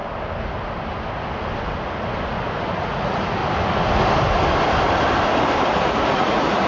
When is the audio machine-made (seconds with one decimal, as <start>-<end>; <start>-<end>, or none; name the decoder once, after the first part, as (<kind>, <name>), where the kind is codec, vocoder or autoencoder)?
2.8-3.4 (vocoder, Vocos); 5.8-6.7